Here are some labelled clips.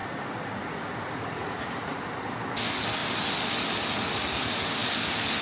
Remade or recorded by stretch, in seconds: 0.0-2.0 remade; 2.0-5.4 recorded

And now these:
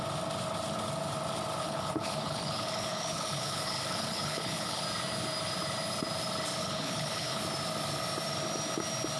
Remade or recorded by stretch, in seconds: 0.0-1.6 recorded; 1.6-4.8 remade; 4.8-6.6 recorded; 6.6-7.4 remade; 7.4-9.2 recorded

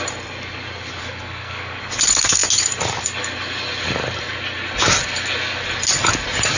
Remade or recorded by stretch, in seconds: 0.0-1.0 recorded; 1.0-1.8 remade; 1.8-6.6 recorded

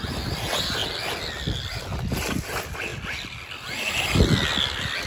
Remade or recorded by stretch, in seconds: 0.0-5.1 recorded

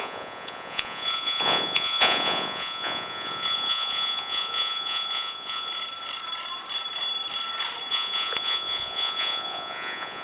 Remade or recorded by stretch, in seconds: 0.0-5.7 remade; 5.7-7.9 recorded; 7.9-10.2 remade

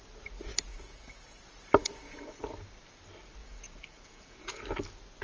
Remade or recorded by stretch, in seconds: 0.0-0.7 recorded; 0.7-1.4 remade; 1.4-1.8 recorded; 1.8-2.4 remade; 2.4-3.4 recorded; 3.4-4.6 remade; 4.6-5.2 recorded

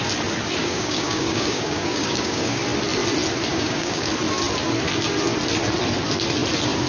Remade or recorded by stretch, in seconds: 0.0-0.6 recorded; 0.6-2.6 remade; 2.6-3.5 recorded; 3.5-4.1 remade; 4.1-6.9 recorded